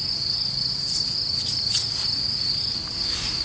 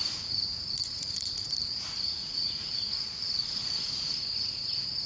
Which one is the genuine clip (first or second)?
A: first